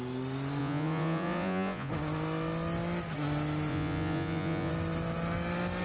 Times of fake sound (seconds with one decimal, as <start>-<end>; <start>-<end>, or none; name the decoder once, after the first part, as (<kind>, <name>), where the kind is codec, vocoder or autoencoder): 0.6-1.9 (vocoder, Vocos); 3.7-4.7